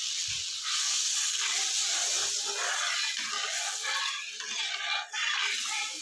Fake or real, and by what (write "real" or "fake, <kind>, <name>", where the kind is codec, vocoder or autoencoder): real